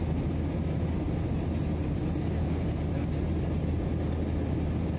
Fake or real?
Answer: real